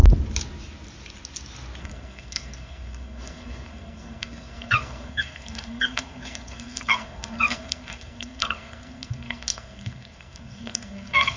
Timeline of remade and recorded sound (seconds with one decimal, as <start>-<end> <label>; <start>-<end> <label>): 0.0-1.8 recorded; 1.8-11.4 remade